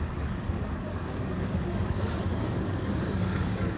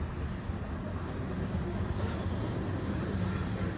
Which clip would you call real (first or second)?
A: second